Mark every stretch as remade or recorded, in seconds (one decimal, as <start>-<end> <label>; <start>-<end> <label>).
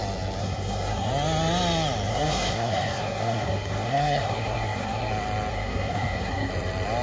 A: 0.0-0.4 recorded; 0.4-1.1 remade; 1.1-2.1 recorded; 2.1-5.1 remade; 5.1-5.5 recorded; 5.5-6.5 remade; 6.5-7.0 recorded